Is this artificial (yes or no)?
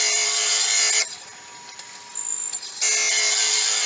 no